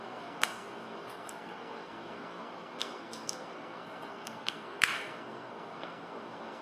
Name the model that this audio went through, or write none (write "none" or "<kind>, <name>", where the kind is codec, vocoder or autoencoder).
codec, SNAC